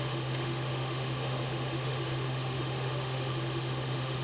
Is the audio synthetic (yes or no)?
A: yes